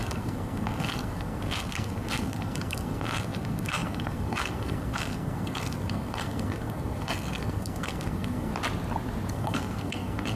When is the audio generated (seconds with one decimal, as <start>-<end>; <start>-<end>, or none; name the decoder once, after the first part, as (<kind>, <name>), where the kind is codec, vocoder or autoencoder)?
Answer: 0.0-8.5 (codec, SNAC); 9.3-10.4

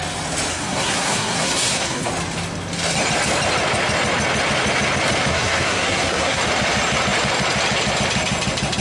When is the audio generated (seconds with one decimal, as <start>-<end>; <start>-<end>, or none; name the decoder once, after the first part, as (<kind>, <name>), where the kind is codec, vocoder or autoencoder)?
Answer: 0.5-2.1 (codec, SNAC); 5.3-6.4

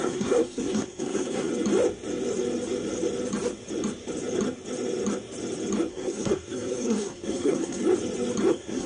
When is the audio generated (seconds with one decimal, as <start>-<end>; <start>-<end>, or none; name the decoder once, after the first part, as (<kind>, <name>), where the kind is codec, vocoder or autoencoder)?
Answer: 0.0-1.5 (codec, SNAC); 5.9-7.8; 8.5-8.9

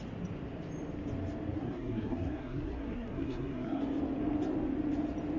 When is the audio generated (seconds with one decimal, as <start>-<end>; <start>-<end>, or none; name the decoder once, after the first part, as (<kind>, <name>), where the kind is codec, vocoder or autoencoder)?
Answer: 1.6-3.8 (codec, SNAC)

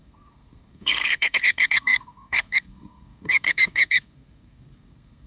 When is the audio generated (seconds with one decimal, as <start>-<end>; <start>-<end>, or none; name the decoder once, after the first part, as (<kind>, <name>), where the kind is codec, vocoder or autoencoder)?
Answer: 0.0-5.3 (codec, SNAC)

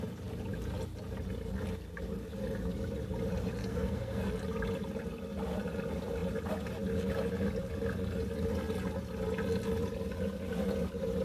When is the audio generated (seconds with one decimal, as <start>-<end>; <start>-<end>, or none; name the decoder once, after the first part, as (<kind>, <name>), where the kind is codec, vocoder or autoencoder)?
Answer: 3.6-4.3 (codec, SNAC)